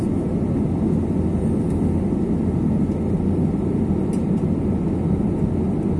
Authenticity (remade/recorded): recorded